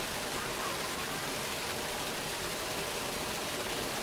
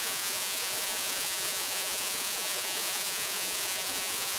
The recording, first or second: first